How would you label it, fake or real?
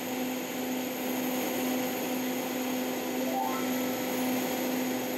real